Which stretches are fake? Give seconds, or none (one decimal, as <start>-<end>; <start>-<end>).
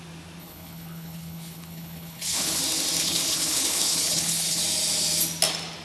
0.4-2.6; 3.0-4.6